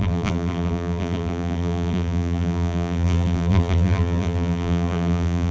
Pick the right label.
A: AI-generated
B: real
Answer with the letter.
A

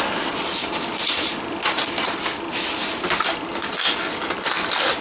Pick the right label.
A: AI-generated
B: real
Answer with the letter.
B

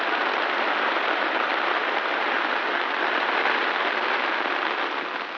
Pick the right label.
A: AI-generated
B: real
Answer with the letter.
A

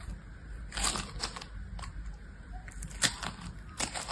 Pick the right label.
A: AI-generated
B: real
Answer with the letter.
B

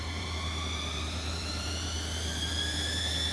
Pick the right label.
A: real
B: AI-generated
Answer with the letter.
B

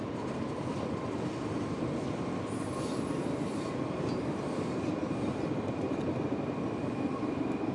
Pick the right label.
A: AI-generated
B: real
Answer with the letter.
A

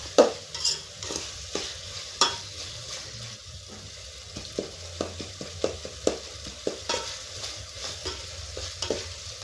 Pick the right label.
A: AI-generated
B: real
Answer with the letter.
A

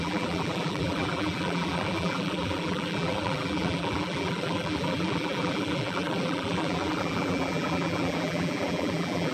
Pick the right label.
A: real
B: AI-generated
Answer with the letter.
B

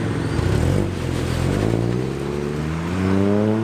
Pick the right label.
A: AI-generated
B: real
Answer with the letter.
B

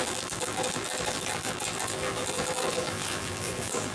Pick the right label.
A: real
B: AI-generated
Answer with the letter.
B